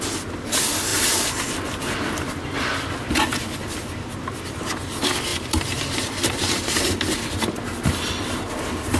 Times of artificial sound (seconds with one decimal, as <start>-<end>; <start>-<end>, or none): 5.3-8.1